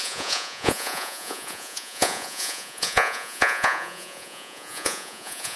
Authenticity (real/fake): fake